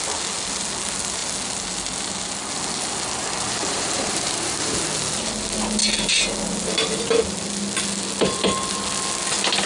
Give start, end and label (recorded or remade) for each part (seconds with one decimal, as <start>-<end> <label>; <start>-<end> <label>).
0.0-3.7 recorded; 3.7-4.8 remade; 4.8-9.7 recorded

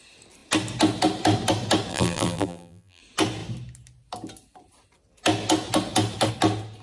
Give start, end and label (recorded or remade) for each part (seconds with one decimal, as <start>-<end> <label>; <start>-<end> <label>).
0.0-1.9 recorded; 1.9-3.0 remade; 3.0-6.8 recorded

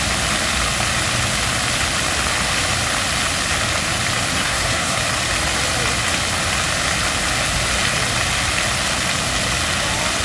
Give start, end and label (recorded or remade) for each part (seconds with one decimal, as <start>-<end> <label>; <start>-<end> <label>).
0.0-4.3 recorded; 4.3-5.0 remade; 5.0-10.2 recorded

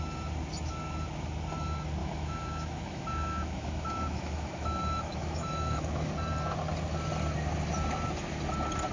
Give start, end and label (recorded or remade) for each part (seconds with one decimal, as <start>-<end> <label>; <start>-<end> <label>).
0.0-2.0 recorded; 2.0-6.1 remade; 6.1-8.9 recorded

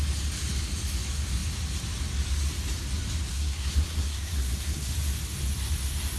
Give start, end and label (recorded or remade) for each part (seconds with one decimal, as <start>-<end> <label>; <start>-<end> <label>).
0.0-3.3 recorded; 3.3-4.9 remade; 4.9-6.2 recorded

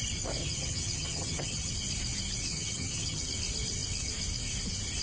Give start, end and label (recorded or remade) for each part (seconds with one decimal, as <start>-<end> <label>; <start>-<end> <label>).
0.0-0.4 recorded; 0.4-1.7 remade; 1.7-2.5 recorded; 2.5-3.2 remade; 3.2-5.0 recorded

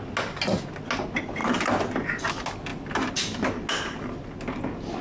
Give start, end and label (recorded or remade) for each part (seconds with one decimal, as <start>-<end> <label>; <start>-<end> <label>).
0.0-5.0 recorded

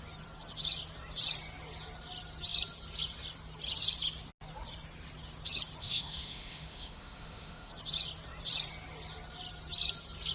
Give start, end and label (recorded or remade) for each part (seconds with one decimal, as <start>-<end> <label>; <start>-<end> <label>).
0.0-5.8 recorded; 5.8-7.7 remade; 7.7-10.3 recorded